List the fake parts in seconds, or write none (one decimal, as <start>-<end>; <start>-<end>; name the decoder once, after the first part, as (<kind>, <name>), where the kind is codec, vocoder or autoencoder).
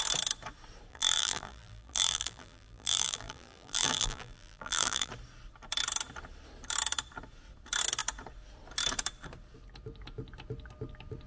0.9-5.1 (vocoder, BigVGAN v2)